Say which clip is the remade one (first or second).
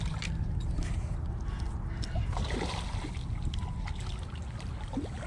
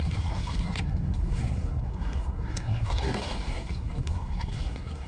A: second